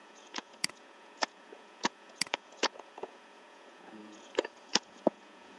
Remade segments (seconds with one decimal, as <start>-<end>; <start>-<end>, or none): 0.0-5.6